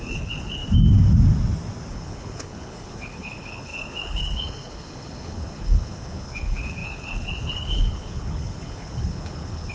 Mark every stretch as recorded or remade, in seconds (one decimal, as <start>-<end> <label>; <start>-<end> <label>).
0.0-0.6 remade; 0.6-1.9 recorded; 1.9-9.7 remade